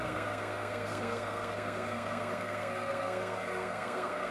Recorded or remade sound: remade